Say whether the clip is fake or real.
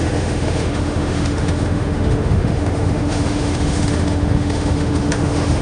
fake